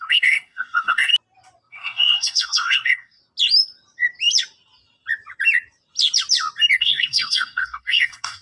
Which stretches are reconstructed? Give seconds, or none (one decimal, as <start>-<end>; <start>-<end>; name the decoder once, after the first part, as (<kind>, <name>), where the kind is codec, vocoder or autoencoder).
0.0-1.1 (codec, SNAC); 1.7-3.2; 6.8-8.4